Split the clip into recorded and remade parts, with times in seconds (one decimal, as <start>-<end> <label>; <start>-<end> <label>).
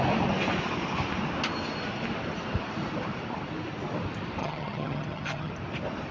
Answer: 0.0-4.4 recorded; 4.4-5.5 remade; 5.5-6.1 recorded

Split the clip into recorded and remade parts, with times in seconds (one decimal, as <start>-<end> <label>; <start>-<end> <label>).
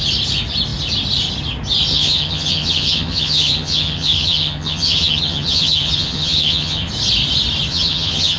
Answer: 0.0-1.9 recorded; 1.9-6.9 remade; 6.9-7.7 recorded; 7.7-8.4 remade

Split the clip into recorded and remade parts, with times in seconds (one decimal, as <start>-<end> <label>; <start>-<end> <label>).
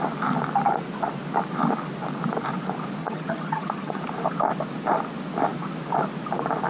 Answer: 0.0-3.0 recorded; 3.0-4.0 remade; 4.0-6.7 recorded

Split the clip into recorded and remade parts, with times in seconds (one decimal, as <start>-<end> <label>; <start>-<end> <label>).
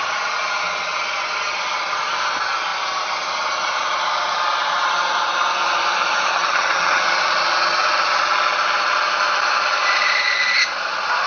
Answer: 0.0-6.3 recorded; 6.3-7.0 remade; 7.0-11.3 recorded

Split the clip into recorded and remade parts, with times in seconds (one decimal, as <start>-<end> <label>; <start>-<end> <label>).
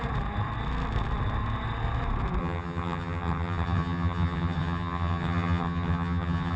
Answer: 0.0-2.4 recorded; 2.4-6.6 remade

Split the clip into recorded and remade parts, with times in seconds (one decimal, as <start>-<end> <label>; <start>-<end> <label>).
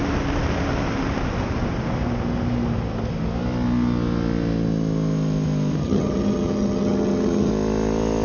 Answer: 0.0-5.8 recorded; 5.8-7.5 remade; 7.5-8.2 recorded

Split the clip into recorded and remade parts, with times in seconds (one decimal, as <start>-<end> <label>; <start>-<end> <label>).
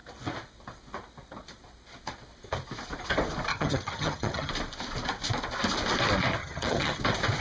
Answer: 0.0-3.5 recorded; 3.5-4.5 remade; 4.5-6.4 recorded; 6.4-7.0 remade; 7.0-7.4 recorded